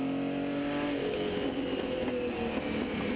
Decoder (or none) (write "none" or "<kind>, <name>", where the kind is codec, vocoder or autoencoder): none